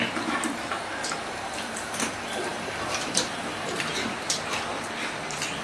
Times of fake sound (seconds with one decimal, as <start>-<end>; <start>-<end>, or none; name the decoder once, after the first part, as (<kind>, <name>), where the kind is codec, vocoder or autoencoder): 0.0-5.6 (vocoder, BigVGAN v2)